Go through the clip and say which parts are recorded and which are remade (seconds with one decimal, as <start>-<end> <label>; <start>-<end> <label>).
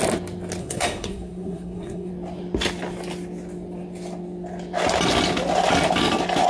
0.0-0.6 recorded; 0.6-2.1 remade; 2.1-6.5 recorded